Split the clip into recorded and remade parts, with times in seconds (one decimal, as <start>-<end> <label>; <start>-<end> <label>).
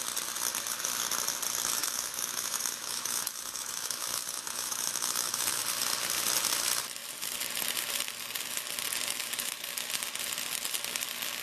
0.0-1.8 recorded; 1.8-5.6 remade; 5.6-11.4 recorded